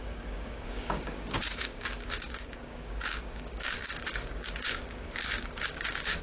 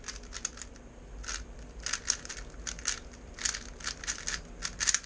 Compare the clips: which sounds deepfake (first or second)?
first